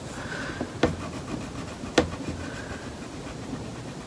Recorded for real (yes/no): yes